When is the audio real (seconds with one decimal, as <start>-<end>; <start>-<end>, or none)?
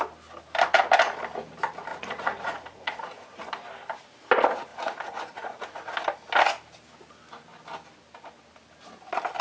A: 0.0-1.9; 3.4-4.7; 5.9-9.4